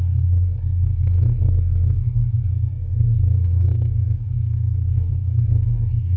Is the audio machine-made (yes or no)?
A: yes